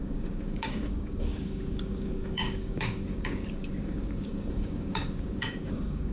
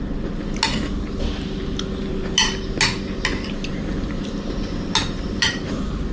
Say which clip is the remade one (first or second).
first